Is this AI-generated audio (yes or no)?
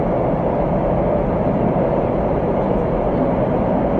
no